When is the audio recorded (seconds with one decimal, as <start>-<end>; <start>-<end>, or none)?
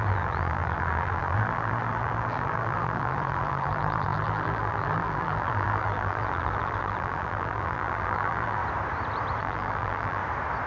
8.6-9.4; 10.2-10.7